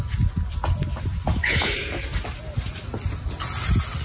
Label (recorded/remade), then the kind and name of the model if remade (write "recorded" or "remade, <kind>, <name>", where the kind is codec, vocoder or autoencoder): recorded